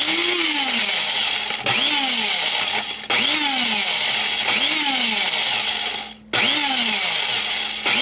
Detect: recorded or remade recorded